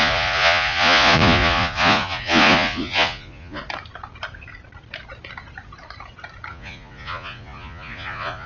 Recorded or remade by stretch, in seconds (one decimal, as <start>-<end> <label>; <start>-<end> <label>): 0.0-3.6 remade; 3.6-6.5 recorded; 6.5-8.5 remade